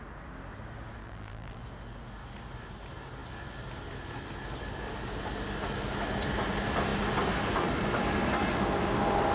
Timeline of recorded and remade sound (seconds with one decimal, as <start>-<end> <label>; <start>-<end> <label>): 0.0-1.0 recorded; 1.0-1.6 remade; 1.6-9.3 recorded

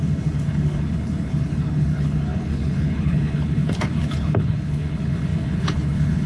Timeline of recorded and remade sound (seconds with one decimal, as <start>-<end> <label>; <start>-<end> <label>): 0.0-6.3 remade

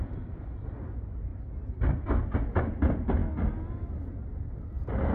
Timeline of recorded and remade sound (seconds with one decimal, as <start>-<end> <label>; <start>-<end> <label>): 0.0-5.1 recorded

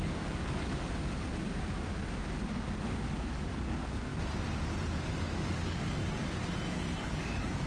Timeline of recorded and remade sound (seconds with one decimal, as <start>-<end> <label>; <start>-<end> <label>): 0.0-1.3 remade; 1.3-2.8 recorded; 2.8-4.1 remade; 4.1-5.2 recorded; 5.2-6.0 remade; 6.0-6.7 recorded; 6.7-7.7 remade

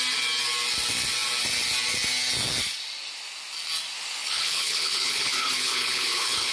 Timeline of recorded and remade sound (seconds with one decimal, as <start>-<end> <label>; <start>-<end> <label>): 0.0-4.2 recorded; 4.2-6.5 remade

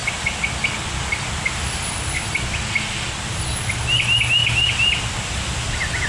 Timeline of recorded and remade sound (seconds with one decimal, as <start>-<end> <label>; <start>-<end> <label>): 0.0-3.6 remade; 3.6-4.4 recorded; 4.4-5.6 remade; 5.6-6.1 recorded

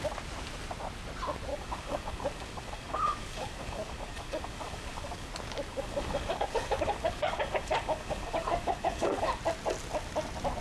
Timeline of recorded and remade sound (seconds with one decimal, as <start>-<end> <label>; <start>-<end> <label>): 0.0-1.5 recorded; 1.5-5.3 remade; 5.3-5.7 recorded; 5.7-9.4 remade; 9.4-10.6 recorded